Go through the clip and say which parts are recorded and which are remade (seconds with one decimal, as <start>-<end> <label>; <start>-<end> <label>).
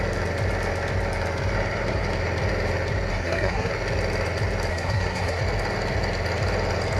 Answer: 0.0-3.1 recorded; 3.1-3.7 remade; 3.7-4.7 recorded; 4.7-5.4 remade; 5.4-7.0 recorded